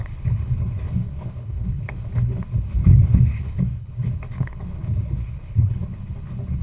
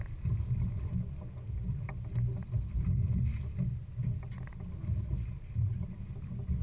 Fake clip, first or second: first